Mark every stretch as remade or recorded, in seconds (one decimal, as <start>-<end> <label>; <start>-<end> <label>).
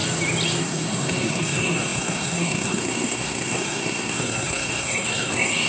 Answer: 0.0-0.6 recorded; 0.6-5.7 remade